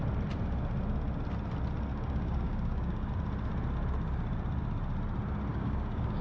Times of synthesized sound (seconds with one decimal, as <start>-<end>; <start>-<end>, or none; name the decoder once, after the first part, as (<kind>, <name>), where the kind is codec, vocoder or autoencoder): 1.9-3.1 (codec, DAC); 5.5-6.2